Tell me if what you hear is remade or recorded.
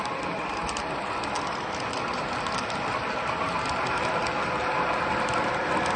recorded